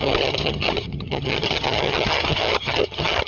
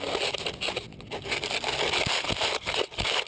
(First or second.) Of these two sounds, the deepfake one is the first